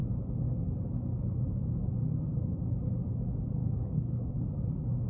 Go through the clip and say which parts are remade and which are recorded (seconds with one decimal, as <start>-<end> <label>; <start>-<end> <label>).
0.0-3.6 recorded; 3.6-4.4 remade; 4.4-5.1 recorded